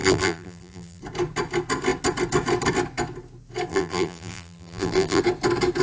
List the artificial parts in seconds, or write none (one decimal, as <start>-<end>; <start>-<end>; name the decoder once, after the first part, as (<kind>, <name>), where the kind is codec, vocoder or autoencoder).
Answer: 0.0-1.0 (vocoder, BigVGAN v2); 3.7-5.2